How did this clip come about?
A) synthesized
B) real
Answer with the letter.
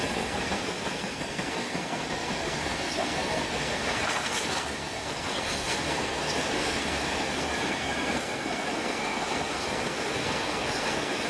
A